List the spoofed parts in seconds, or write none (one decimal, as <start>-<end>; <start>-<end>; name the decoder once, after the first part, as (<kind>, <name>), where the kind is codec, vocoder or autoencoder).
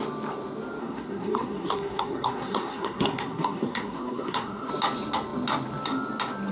0.8-4.7 (codec, SNAC)